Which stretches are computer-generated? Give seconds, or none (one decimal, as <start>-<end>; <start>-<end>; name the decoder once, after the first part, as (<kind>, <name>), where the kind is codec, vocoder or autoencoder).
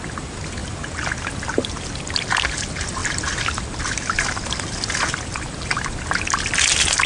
none